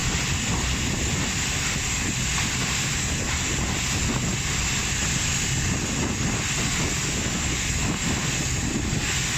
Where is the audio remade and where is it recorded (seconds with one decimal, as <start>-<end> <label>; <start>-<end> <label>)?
0.0-9.4 recorded